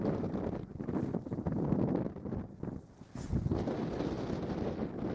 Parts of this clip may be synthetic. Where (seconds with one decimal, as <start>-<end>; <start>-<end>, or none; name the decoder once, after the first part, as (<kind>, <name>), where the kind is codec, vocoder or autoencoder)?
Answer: none